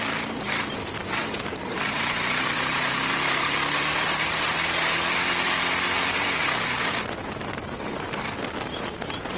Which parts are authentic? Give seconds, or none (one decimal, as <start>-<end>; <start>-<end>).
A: 3.1-6.9